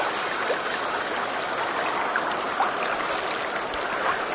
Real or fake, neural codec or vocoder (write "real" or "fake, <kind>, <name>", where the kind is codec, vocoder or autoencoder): real